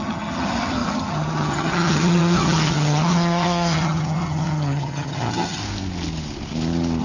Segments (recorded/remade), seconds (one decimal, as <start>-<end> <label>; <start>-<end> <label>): 0.0-5.6 remade; 5.6-7.0 recorded